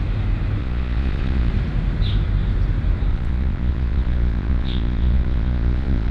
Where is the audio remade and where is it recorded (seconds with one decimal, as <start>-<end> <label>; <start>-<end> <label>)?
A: 0.0-0.6 recorded; 0.6-1.5 remade; 1.5-3.1 recorded; 3.1-6.1 remade